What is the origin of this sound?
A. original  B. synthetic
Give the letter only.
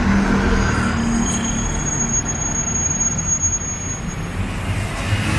A